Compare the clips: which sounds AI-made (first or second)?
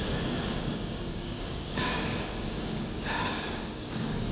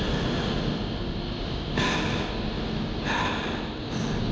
first